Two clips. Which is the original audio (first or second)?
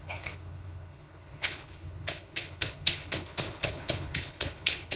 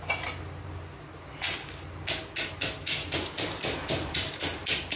second